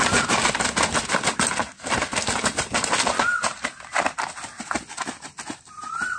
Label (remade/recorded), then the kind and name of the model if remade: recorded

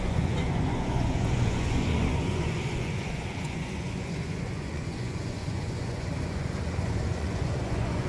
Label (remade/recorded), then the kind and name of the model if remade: remade, vocoder, Vocos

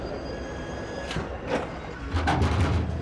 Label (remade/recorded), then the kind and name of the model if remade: recorded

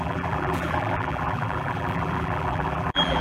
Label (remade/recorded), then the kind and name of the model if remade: remade, vocoder, BigVGAN v2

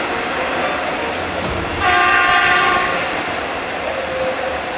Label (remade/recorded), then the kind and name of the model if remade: recorded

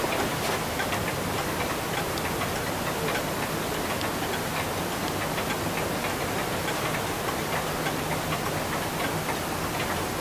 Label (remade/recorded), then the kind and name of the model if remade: recorded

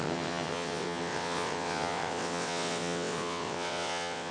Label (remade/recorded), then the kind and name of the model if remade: remade, vocoder, WaveNeXt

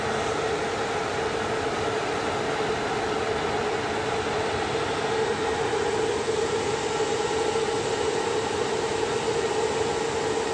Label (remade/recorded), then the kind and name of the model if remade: recorded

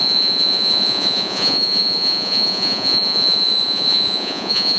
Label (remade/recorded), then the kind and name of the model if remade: remade, vocoder, Vocos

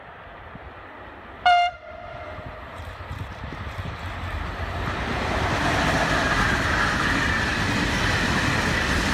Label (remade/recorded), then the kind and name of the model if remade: recorded